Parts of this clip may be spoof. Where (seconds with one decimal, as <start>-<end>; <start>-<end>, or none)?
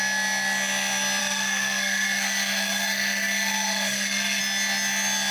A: 1.2-4.4